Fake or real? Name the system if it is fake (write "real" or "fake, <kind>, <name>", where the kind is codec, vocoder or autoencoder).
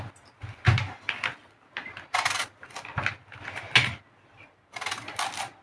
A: real